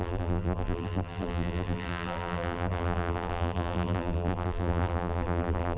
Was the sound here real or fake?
fake